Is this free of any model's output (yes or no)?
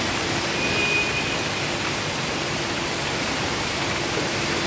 no